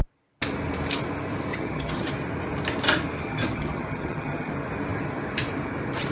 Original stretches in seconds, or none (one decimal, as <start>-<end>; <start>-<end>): 0.0-1.5; 2.1-3.2; 4.5-6.1